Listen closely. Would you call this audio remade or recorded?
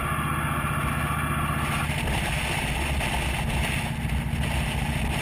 recorded